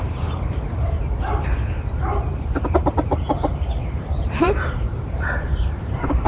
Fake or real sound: fake